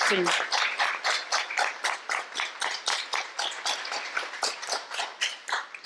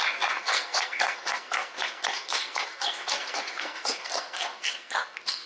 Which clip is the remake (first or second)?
second